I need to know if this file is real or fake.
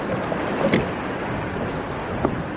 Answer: real